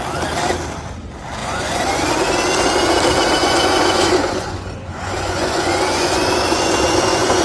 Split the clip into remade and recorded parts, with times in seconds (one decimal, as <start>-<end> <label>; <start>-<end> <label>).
0.0-1.4 recorded; 1.4-2.1 remade; 2.1-3.4 recorded; 3.4-7.4 remade